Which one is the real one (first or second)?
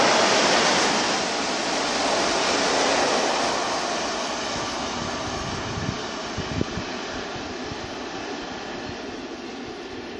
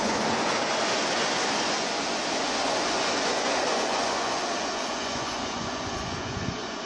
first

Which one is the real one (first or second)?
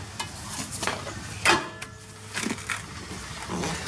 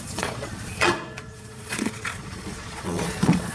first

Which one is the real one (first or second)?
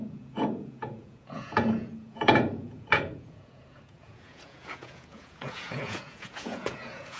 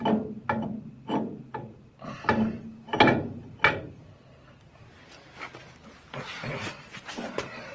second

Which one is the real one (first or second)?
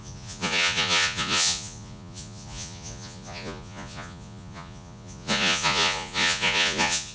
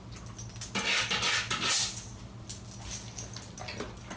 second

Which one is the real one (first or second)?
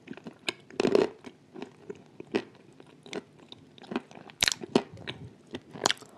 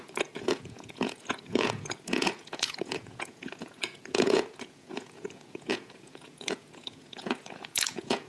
first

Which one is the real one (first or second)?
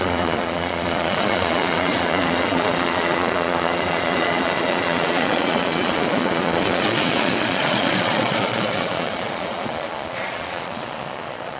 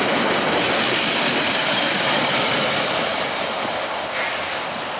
second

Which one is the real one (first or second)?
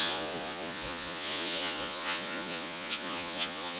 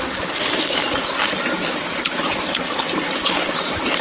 second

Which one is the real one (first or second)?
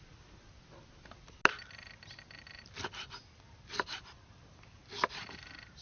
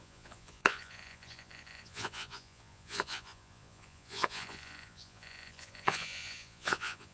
first